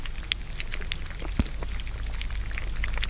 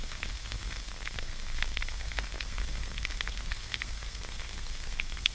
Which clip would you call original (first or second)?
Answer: first